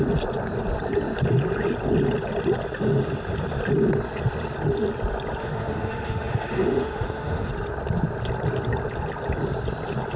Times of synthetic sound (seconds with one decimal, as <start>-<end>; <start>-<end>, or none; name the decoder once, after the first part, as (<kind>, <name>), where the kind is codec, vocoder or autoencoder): 5.4-7.5 (autoencoder, DAC-VAE)